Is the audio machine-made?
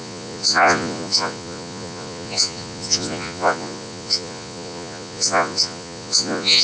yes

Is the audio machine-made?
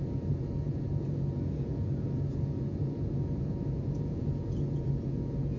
yes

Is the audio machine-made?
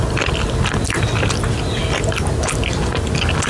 no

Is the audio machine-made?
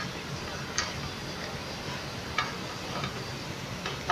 no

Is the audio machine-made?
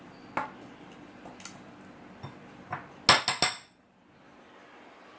no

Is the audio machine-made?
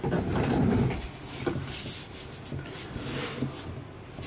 no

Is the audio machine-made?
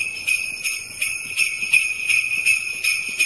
yes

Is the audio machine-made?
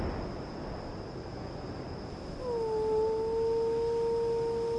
no